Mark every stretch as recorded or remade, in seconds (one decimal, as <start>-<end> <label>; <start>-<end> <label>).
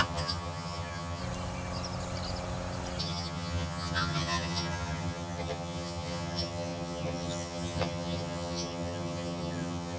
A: 0.0-1.2 remade; 1.2-3.0 recorded; 3.0-10.0 remade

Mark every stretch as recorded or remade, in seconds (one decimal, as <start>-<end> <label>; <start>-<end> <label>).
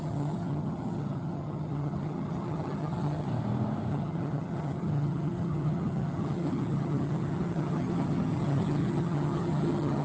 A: 0.0-3.3 remade; 3.3-3.9 recorded; 3.9-10.0 remade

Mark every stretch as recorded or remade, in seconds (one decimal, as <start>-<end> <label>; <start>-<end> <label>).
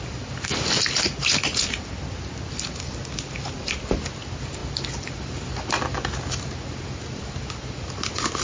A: 0.0-8.4 recorded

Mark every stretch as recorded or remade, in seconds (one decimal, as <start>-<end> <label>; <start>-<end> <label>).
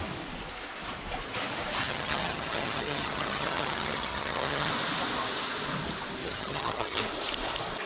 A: 0.0-1.8 recorded; 1.8-4.7 remade; 4.7-6.2 recorded; 6.2-7.0 remade; 7.0-7.9 recorded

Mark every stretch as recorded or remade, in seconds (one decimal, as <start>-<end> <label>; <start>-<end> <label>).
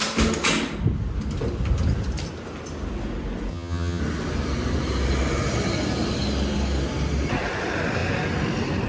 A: 0.0-3.5 recorded; 3.5-4.0 remade; 4.0-8.9 recorded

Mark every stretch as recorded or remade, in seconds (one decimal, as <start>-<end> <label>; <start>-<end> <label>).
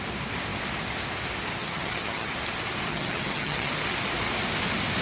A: 0.0-1.6 recorded; 1.6-2.3 remade; 2.3-2.9 recorded; 2.9-3.7 remade; 3.7-5.0 recorded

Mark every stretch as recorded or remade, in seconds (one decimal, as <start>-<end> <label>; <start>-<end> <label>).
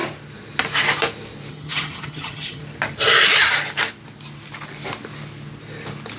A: 0.0-1.5 recorded; 1.5-2.6 remade; 2.6-6.2 recorded